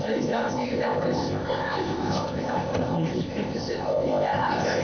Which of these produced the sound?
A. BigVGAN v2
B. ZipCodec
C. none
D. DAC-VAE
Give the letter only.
B